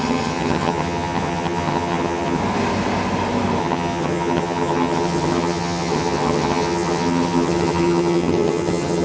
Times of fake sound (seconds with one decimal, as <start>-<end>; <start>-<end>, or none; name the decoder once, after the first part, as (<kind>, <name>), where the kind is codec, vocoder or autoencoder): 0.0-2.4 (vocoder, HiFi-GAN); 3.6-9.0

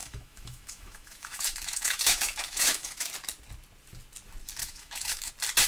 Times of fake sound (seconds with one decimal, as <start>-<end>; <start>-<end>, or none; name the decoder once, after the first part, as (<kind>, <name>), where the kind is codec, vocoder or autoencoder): 0.0-3.1 (autoencoder, DAC-VAE); 4.6-5.3

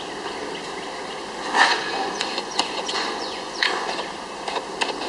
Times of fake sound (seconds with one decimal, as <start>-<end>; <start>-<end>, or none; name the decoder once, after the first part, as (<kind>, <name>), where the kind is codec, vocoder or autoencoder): 1.7-3.9 (vocoder, Vocos)

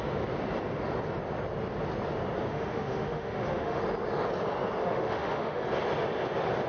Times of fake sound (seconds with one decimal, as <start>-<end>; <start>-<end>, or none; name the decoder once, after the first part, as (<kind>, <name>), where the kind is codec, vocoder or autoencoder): 2.5-3.8 (autoencoder, DAC-VAE); 4.8-5.6

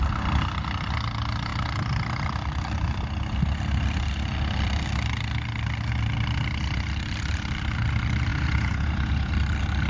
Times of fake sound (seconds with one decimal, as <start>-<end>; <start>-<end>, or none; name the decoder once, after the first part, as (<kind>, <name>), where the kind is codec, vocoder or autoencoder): 8.3-9.3 (vocoder, Vocos)

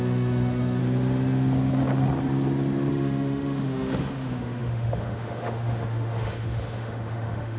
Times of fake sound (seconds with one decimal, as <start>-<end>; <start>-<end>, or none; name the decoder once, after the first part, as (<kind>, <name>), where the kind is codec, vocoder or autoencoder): 0.0-0.8 (autoencoder, DAC-VAE); 2.9-7.6